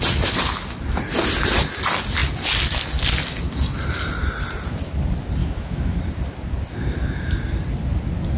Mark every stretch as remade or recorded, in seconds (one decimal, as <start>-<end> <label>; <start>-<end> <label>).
0.0-5.4 recorded; 5.4-6.0 remade; 6.0-8.4 recorded